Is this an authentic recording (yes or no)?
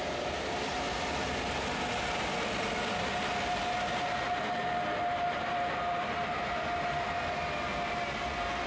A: yes